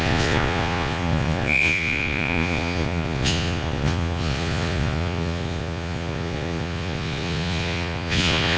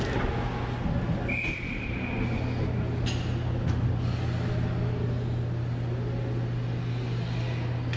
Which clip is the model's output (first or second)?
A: first